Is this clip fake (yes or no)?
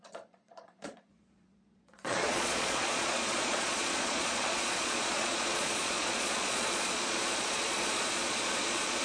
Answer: yes